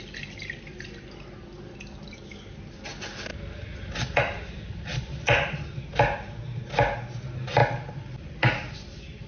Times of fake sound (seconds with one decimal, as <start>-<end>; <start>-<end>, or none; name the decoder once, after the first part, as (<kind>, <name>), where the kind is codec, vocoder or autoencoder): none